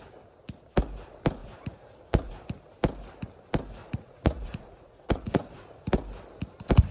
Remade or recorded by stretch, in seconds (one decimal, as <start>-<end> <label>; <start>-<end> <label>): 0.0-1.4 recorded; 1.4-2.3 remade; 2.3-3.8 recorded; 3.8-5.7 remade; 5.7-6.9 recorded

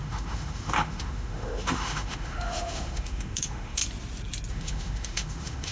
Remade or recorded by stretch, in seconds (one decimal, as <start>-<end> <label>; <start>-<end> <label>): 0.0-3.8 remade; 3.8-4.5 recorded; 4.5-5.7 remade